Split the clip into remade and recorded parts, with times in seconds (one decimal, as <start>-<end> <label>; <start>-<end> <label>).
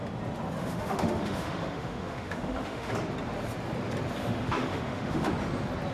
0.0-0.6 recorded; 0.6-2.9 remade; 2.9-4.2 recorded; 4.2-5.3 remade; 5.3-5.9 recorded